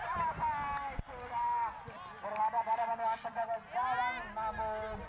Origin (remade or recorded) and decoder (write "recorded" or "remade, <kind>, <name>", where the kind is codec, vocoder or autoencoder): recorded